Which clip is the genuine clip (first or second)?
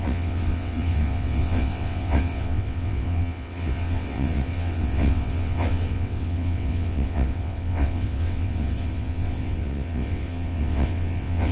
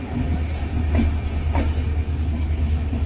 second